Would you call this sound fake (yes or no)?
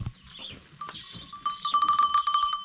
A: no